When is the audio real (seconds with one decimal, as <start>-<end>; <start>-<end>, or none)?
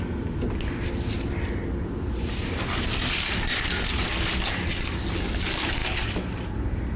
0.0-7.0